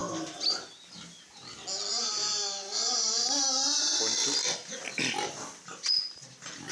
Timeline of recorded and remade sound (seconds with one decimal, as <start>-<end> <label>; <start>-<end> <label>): 0.0-6.7 recorded